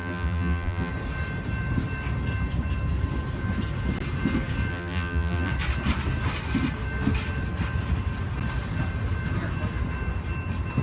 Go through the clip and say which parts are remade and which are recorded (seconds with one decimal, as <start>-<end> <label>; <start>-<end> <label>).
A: 0.0-0.9 remade; 0.9-4.7 recorded; 4.7-5.5 remade; 5.5-10.8 recorded